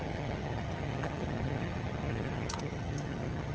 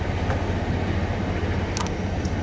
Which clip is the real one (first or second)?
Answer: second